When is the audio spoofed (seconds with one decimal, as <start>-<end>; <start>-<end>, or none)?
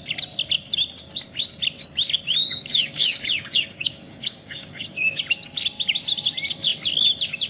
2.4-5.2